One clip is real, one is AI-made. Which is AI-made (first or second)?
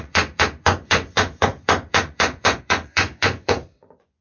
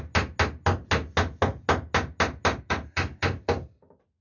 first